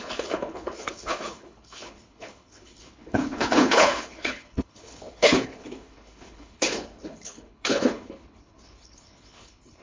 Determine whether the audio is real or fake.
fake